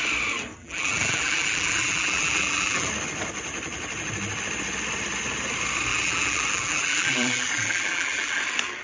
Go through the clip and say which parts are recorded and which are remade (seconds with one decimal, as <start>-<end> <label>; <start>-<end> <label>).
0.0-0.6 recorded; 0.6-2.9 remade; 2.9-5.9 recorded; 5.9-8.4 remade; 8.4-8.8 recorded